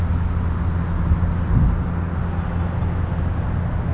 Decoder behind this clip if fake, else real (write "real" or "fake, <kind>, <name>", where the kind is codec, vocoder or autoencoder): real